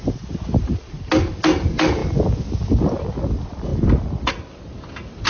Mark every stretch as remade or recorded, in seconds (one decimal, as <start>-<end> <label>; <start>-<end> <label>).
0.0-3.7 recorded; 3.7-4.3 remade; 4.3-5.3 recorded